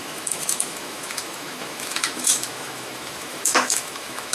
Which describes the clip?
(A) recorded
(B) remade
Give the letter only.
B